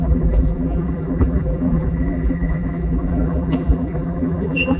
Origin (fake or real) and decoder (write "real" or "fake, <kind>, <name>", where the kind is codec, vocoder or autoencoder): fake, vocoder, BigVGAN v2